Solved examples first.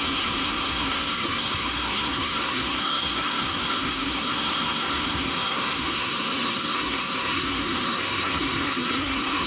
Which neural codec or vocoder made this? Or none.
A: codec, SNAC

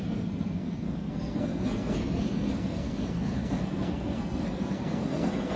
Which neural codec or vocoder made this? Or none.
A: codec, SNAC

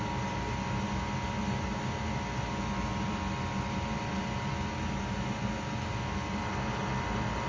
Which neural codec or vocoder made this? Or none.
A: none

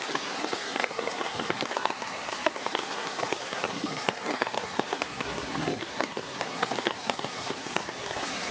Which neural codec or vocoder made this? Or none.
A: codec, SNAC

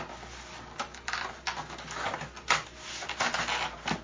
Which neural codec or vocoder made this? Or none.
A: none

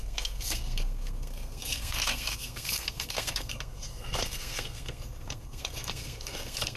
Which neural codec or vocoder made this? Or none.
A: codec, SNAC